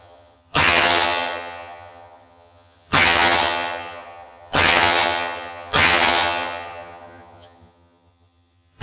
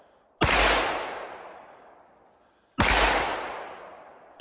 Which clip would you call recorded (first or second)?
second